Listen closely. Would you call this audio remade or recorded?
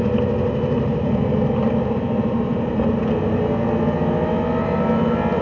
recorded